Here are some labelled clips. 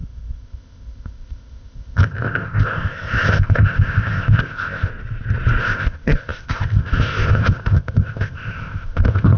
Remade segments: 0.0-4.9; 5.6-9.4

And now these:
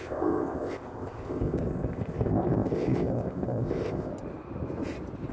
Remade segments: 0.0-4.1

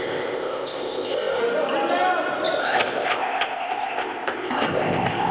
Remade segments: 0.0-1.4; 2.6-5.3